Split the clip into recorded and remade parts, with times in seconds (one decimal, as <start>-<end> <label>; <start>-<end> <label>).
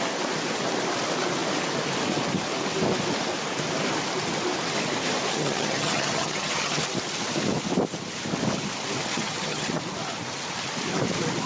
0.0-5.3 recorded; 5.3-6.8 remade; 6.8-9.1 recorded; 9.1-9.8 remade; 9.8-11.5 recorded